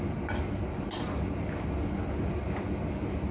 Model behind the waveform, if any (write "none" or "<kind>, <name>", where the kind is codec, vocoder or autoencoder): none